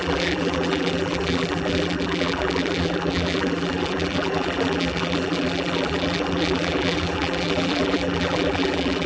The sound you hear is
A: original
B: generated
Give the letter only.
B